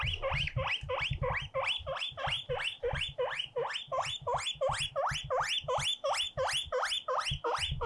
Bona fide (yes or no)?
yes